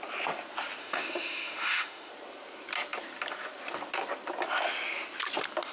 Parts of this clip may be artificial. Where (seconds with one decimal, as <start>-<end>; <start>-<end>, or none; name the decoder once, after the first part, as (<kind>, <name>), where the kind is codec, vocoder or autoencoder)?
0.8-2.1 (autoencoder, DAC-VAE)